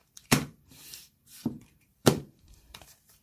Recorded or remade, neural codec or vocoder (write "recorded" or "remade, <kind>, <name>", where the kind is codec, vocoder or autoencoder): remade, vocoder, BigVGAN v2